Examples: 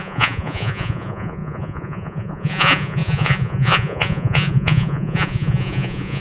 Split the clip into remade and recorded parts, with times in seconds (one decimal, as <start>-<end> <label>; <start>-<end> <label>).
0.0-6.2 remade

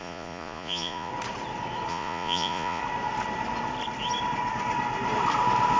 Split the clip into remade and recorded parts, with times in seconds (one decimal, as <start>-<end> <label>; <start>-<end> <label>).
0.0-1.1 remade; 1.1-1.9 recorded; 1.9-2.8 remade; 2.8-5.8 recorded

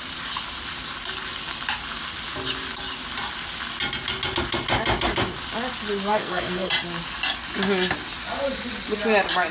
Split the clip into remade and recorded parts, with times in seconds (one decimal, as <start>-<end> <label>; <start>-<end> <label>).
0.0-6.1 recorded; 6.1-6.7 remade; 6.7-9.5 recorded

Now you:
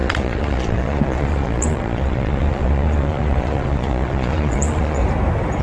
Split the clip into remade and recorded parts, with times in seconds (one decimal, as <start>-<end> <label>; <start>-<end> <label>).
0.0-5.0 remade; 5.0-5.6 recorded